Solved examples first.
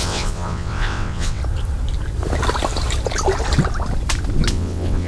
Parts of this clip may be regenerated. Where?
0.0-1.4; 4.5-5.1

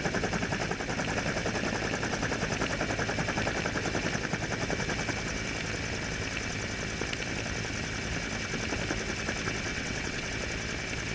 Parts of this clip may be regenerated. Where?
9.7-10.3

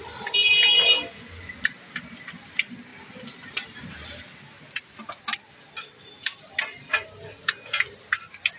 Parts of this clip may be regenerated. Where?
none

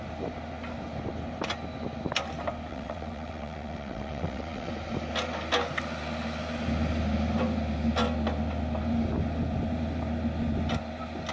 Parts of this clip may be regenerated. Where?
2.7-4.7

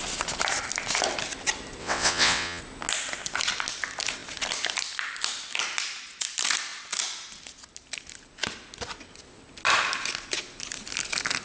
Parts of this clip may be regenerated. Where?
1.8-2.6

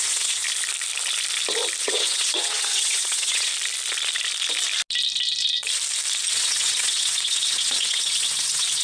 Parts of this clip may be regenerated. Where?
0.0-0.4; 1.8-3.5; 6.3-8.8

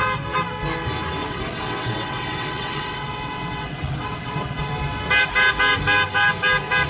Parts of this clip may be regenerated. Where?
1.2-4.7

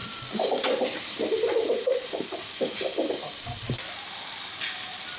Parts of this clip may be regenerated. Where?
none